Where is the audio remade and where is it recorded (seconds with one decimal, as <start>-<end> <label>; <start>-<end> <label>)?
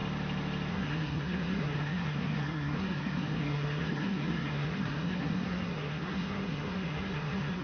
0.0-0.7 recorded; 0.7-7.6 remade